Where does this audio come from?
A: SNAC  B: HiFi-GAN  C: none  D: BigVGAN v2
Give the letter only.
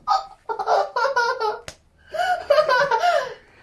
C